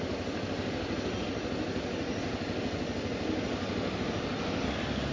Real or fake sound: real